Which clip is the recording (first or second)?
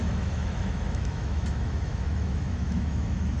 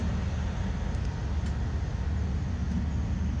second